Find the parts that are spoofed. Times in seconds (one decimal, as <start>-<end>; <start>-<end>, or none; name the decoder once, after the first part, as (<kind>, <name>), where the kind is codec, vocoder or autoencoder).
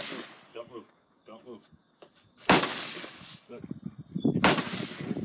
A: 0.5-3.6 (codec, DAC)